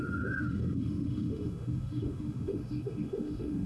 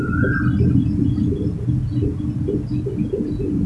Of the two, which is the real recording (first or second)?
second